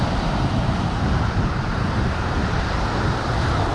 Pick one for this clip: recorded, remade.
remade